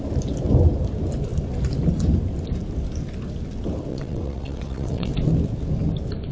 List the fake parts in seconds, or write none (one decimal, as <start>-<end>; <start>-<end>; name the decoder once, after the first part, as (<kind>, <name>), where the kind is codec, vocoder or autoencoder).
3.9-5.1 (vocoder, WaveNeXt)